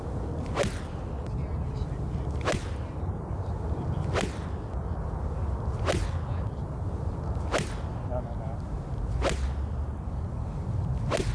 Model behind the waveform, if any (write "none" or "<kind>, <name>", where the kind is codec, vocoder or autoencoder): none